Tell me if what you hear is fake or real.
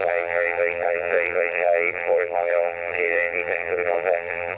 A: fake